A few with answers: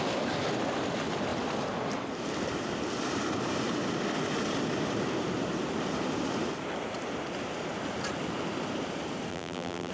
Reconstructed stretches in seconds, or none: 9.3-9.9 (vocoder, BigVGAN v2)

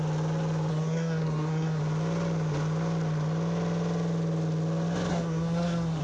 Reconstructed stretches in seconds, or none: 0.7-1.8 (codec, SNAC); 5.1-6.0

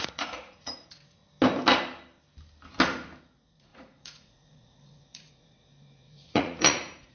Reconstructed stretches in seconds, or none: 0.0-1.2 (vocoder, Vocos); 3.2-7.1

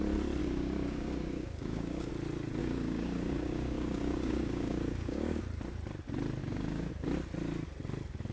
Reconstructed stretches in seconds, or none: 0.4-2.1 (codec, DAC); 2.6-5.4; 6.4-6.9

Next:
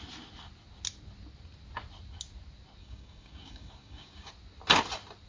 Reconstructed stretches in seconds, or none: 2.8-4.3 (codec, DAC)

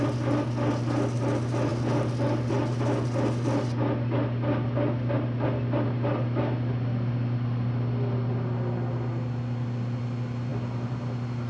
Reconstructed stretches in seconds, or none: none

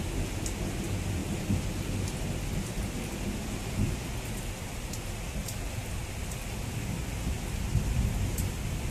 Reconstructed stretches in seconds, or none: none